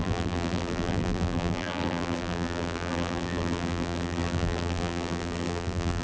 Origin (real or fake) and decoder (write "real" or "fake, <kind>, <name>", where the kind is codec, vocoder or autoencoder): fake, vocoder, BigVGAN v2